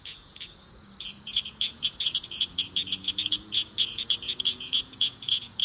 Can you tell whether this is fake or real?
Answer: fake